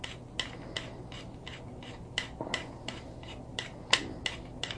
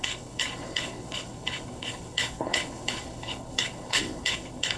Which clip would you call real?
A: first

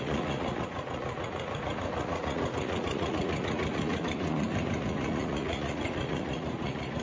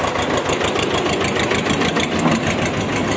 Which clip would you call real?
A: second